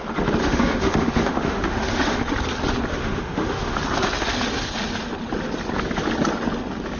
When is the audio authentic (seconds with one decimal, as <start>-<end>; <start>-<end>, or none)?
0.0-0.4; 2.2-2.9; 3.8-7.0